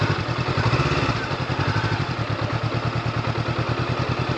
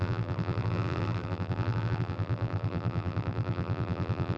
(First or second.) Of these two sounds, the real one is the first